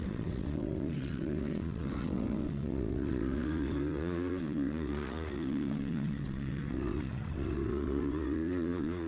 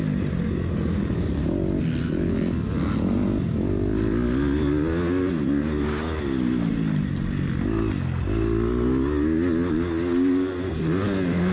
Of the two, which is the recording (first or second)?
second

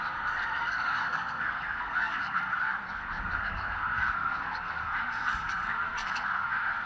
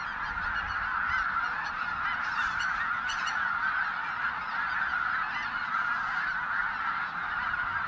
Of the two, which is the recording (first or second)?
second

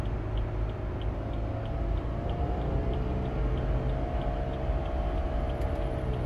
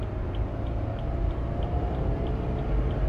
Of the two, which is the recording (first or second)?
first